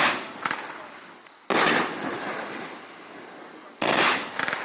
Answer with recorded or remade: recorded